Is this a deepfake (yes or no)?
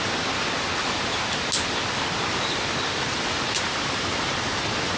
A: no